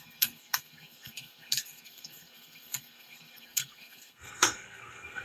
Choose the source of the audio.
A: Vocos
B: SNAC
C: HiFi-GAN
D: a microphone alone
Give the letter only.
B